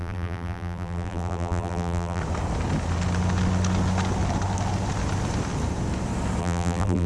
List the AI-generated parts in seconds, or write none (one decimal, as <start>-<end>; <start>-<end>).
0.0-2.2; 6.4-7.1